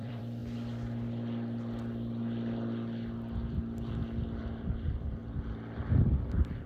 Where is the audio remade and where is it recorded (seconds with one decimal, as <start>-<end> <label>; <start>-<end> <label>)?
0.0-0.4 remade; 0.4-4.4 recorded; 4.4-5.2 remade; 5.2-6.3 recorded; 6.3-6.7 remade